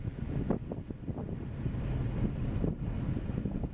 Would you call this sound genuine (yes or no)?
yes